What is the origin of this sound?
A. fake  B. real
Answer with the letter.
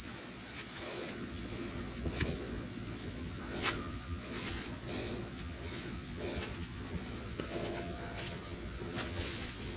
A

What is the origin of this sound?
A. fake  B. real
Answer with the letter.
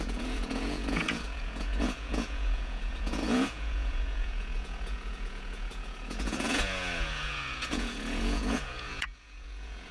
A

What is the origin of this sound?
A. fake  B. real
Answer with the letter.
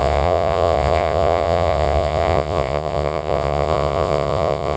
A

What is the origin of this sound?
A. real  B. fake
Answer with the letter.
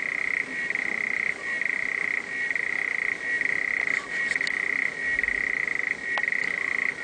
A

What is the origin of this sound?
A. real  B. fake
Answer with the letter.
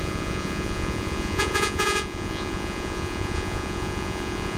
B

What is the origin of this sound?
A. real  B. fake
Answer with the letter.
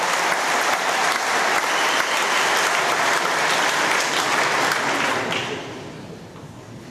A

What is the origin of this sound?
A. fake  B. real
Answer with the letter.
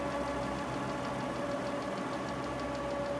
B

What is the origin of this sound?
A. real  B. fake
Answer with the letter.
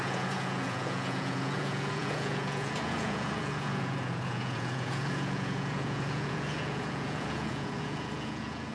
B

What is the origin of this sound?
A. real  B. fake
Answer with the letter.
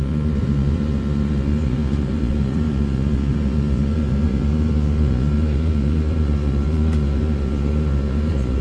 B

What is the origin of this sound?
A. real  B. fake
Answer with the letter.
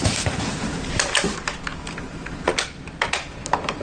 A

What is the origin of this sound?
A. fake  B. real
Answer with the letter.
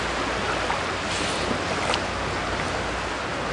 B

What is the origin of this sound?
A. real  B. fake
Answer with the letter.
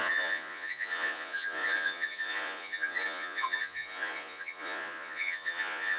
B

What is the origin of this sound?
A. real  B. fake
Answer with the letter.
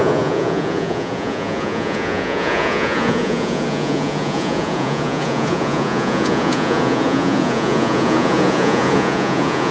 B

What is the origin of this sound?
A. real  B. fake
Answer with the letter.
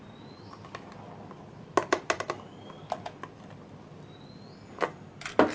A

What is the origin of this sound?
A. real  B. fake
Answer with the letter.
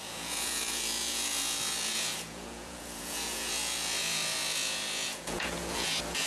B